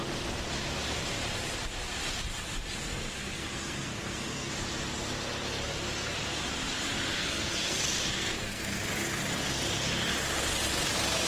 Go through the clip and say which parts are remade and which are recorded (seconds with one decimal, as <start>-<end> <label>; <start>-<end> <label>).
0.0-2.9 recorded; 2.9-4.5 remade; 4.5-7.1 recorded; 7.1-8.8 remade; 8.8-11.3 recorded